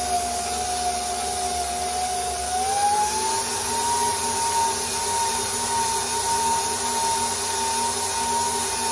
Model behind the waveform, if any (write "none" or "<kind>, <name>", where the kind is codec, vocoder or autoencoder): none